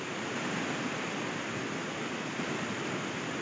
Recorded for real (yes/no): yes